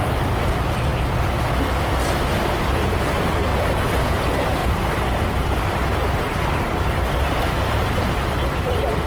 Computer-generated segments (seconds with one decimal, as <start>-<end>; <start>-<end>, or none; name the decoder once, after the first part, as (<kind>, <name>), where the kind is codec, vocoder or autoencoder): 0.0-0.9 (vocoder, BigVGAN v2); 2.6-3.5; 4.1-4.6; 5.2-9.1